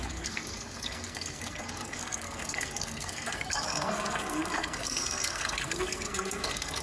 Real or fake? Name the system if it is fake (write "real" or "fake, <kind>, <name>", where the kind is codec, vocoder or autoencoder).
fake, codec, SNAC